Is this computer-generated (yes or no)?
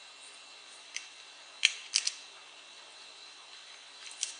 yes